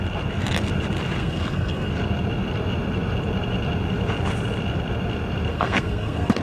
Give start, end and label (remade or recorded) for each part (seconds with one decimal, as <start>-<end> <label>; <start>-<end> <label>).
0.0-1.2 recorded; 1.2-1.9 remade; 1.9-5.5 recorded; 5.5-6.4 remade